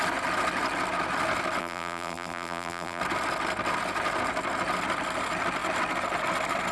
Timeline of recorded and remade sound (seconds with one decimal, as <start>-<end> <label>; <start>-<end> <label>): 0.0-1.6 recorded; 1.6-3.0 remade; 3.0-6.7 recorded